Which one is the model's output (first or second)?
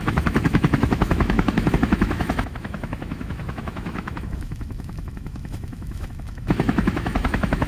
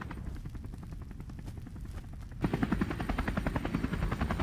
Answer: first